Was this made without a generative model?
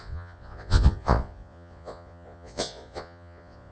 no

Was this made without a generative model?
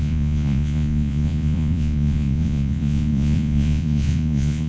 no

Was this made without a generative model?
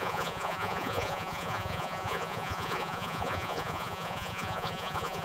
no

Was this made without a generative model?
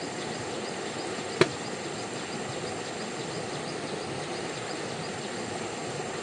yes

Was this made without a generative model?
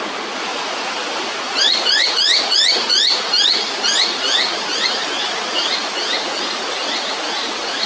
no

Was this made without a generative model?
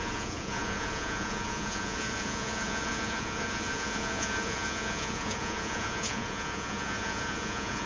no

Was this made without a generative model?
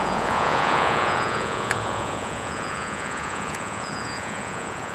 no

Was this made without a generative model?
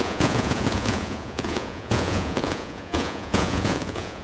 no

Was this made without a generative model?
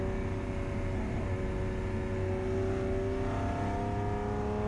yes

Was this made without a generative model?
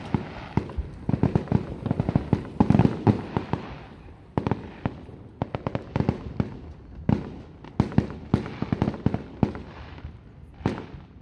yes